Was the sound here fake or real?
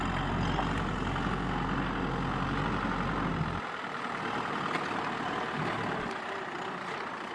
real